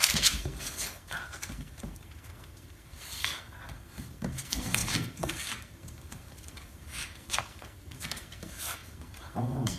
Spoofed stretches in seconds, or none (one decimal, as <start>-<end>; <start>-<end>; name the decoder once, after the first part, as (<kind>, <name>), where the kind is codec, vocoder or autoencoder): 0.0-9.8 (codec, SNAC)